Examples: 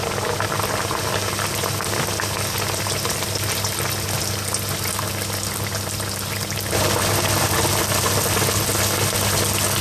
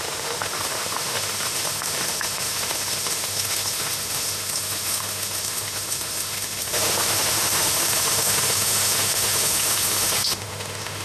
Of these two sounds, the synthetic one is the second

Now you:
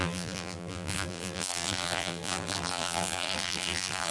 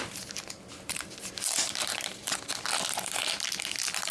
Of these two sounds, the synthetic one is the first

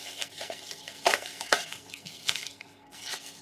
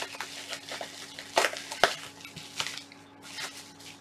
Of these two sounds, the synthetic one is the first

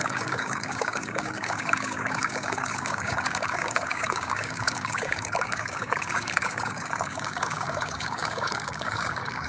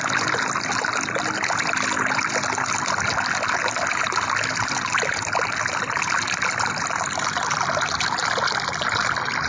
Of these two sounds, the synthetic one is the first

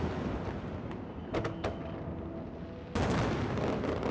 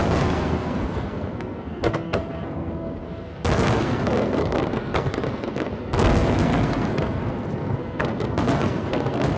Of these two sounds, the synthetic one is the second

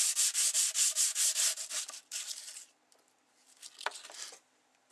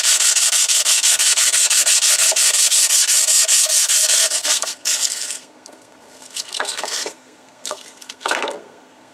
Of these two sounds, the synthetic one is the second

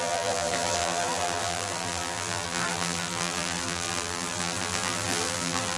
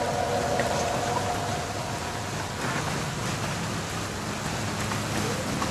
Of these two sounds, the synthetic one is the first